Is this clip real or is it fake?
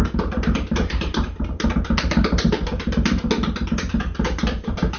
real